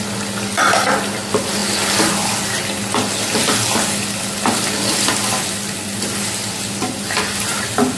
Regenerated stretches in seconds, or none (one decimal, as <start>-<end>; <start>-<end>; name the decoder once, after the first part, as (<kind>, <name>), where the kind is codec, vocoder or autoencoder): none